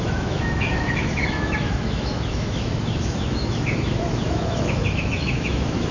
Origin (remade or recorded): remade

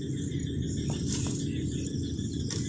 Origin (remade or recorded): recorded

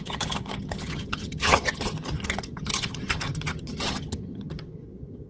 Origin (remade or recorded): remade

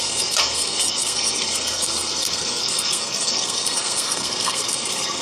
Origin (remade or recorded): remade